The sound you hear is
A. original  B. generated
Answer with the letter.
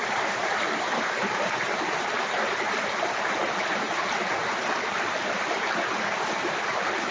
A